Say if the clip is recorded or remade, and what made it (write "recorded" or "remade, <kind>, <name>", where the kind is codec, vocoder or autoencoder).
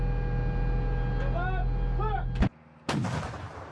recorded